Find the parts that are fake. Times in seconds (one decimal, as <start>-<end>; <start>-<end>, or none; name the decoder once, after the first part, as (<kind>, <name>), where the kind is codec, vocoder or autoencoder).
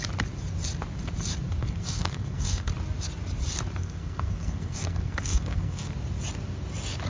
1.6-2.7 (codec, SNAC); 3.8-5.9